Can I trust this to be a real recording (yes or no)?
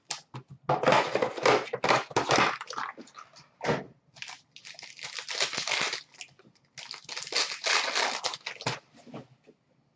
yes